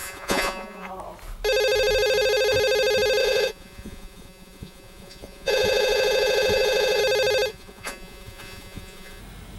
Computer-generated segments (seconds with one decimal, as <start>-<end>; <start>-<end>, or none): 0.0-0.9; 3.2-7.0; 7.5-9.2